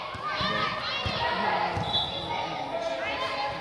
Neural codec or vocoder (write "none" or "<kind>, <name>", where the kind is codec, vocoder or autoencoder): none